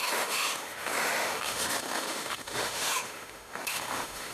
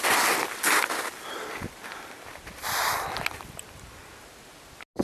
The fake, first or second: first